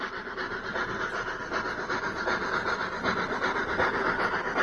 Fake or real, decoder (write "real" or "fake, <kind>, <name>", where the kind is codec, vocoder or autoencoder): real